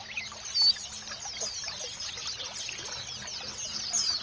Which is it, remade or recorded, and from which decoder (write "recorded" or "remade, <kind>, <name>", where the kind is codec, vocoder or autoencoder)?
recorded